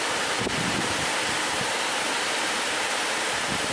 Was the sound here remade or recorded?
remade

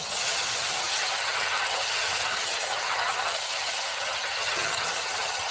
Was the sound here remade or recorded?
remade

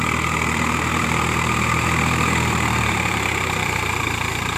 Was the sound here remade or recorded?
remade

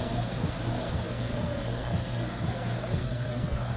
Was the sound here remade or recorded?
remade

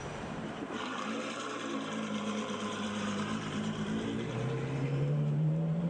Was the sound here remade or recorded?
remade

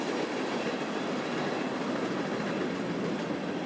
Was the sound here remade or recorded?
recorded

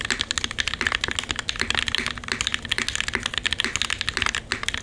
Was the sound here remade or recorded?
recorded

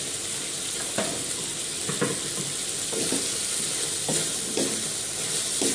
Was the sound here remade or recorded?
recorded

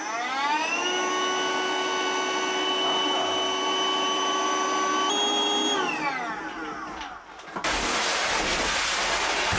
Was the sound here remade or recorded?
recorded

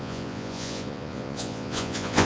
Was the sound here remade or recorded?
remade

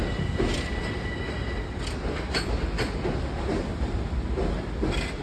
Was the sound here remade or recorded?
recorded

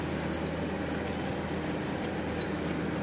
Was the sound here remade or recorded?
recorded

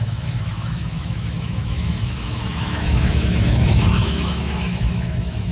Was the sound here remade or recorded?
remade